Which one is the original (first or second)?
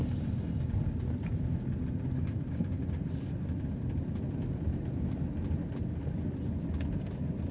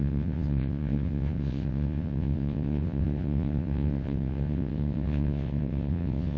first